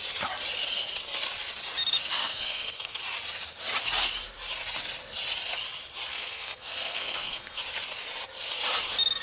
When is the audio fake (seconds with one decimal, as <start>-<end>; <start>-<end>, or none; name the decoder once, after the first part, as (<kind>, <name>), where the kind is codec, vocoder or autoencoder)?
2.2-3.0 (codec, SNAC); 6.1-7.6

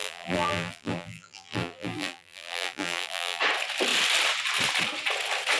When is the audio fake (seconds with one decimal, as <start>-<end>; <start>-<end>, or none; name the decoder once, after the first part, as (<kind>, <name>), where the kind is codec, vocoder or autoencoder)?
0.0-3.4 (vocoder, BigVGAN v2)

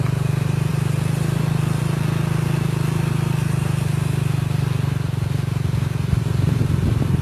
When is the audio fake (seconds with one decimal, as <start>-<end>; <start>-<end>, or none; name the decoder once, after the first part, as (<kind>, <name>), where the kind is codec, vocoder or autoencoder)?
none

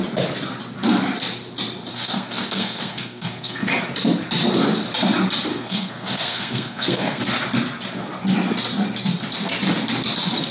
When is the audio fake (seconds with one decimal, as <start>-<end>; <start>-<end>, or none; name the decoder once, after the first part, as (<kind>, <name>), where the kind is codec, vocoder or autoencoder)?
1.9-3.7 (codec, SNAC); 5.5-7.2

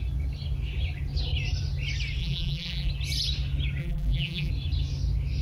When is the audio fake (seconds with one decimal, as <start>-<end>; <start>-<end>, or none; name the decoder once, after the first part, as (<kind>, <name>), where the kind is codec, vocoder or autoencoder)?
2.2-2.9 (vocoder, BigVGAN v2); 3.8-4.5

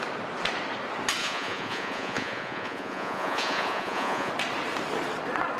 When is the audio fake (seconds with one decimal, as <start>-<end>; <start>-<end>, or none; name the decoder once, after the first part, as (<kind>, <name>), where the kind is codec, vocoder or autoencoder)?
1.2-4.3 (vocoder, Vocos)